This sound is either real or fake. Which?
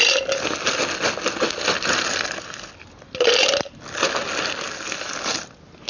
real